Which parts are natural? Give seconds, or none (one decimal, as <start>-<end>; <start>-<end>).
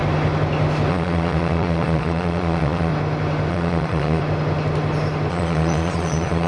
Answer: 0.0-0.9; 2.9-3.5; 4.2-5.3